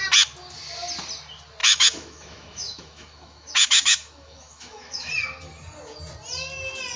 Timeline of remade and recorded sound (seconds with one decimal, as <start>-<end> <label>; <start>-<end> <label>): 0.0-1.6 recorded; 1.6-5.1 remade; 5.1-7.0 recorded

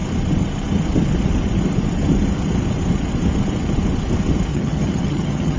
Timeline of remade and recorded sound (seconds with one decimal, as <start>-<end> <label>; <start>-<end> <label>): 0.0-4.5 recorded; 4.5-5.6 remade

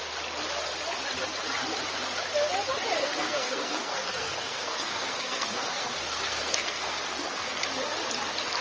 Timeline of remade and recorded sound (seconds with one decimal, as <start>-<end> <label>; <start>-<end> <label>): 0.0-3.0 recorded; 3.0-7.6 remade; 7.6-8.6 recorded

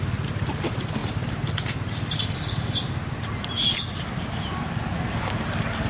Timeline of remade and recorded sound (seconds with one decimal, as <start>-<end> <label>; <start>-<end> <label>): 0.0-5.9 recorded

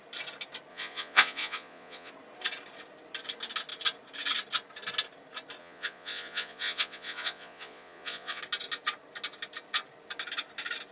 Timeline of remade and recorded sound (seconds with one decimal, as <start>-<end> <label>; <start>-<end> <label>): 0.0-0.7 recorded; 0.7-2.1 remade; 2.1-5.6 recorded; 5.6-8.4 remade; 8.4-10.9 recorded

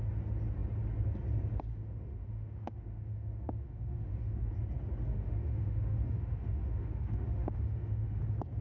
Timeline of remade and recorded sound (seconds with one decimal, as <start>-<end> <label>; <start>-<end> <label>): 0.0-1.7 recorded; 1.7-4.5 remade; 4.5-5.1 recorded; 5.1-8.2 remade; 8.2-8.6 recorded

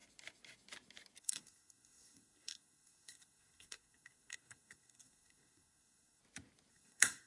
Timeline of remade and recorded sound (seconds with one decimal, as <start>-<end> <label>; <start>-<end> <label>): 0.0-1.2 recorded; 1.2-6.2 remade; 6.2-6.7 recorded; 6.7-7.3 remade